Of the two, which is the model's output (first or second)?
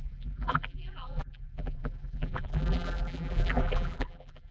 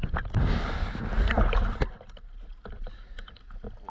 first